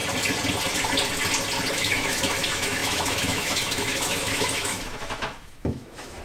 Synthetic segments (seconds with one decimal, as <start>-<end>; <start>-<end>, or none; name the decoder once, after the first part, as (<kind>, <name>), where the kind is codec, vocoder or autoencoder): 1.7-6.2 (autoencoder, DAC-VAE)